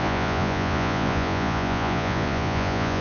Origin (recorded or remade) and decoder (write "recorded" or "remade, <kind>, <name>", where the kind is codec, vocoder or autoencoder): remade, vocoder, Vocos